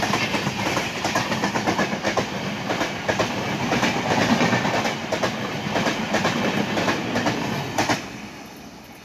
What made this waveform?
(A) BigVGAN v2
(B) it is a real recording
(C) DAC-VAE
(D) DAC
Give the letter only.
B